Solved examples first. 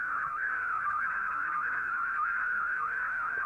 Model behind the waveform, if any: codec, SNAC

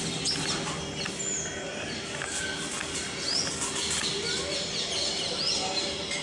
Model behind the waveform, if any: none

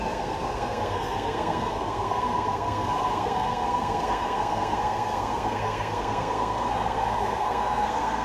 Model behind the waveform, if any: codec, SNAC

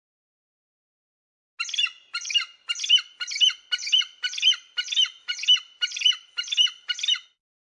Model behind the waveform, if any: none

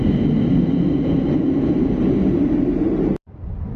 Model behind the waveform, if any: none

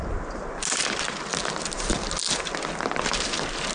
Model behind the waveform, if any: none